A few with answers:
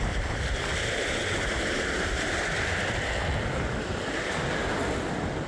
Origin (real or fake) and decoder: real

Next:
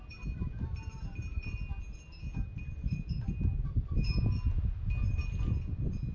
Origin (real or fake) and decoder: real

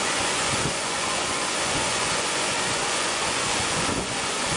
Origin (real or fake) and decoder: fake, vocoder, Vocos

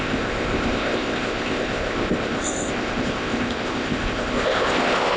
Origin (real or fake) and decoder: fake, codec, ZipCodec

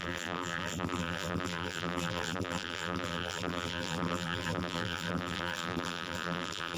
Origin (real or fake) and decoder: fake, vocoder, BigVGAN v2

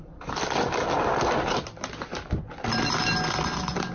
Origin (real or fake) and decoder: real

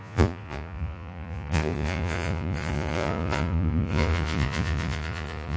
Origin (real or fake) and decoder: fake, vocoder, Vocos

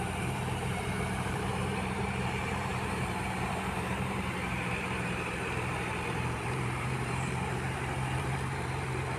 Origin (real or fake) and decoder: fake, vocoder, BigVGAN v2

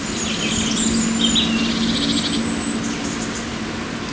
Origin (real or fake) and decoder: real